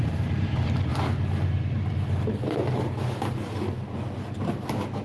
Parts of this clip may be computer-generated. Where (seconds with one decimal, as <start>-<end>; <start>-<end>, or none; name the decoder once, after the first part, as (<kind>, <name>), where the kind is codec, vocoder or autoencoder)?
0.0-0.5 (vocoder, BigVGAN v2)